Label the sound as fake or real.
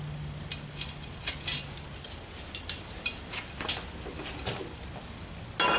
real